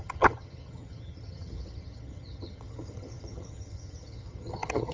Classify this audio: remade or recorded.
remade